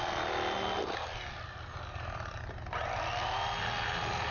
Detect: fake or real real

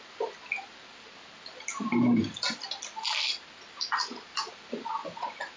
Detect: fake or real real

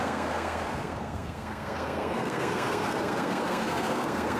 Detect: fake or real fake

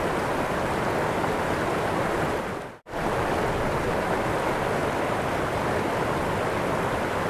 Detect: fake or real real